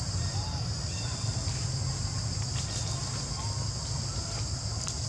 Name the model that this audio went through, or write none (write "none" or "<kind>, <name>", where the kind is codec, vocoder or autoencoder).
none